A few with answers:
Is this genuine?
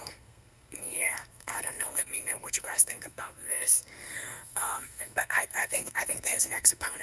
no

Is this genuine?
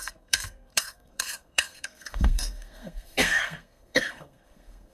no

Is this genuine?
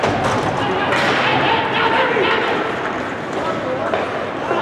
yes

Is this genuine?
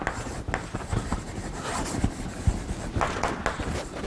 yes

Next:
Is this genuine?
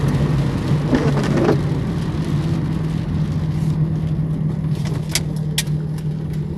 yes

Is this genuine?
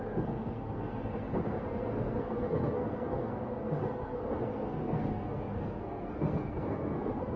no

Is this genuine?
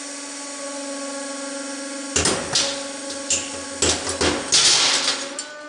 yes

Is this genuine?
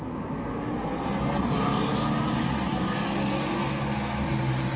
yes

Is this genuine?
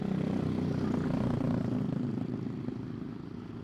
yes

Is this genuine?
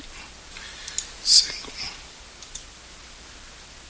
yes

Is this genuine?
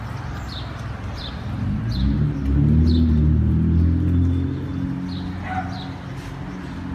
yes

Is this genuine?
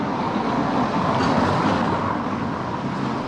yes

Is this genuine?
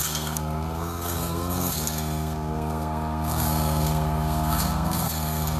no